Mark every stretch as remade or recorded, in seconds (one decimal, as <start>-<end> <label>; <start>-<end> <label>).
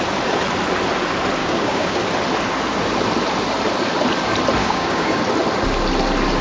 0.0-1.4 recorded; 1.4-2.0 remade; 2.0-4.6 recorded; 4.6-5.2 remade; 5.2-6.4 recorded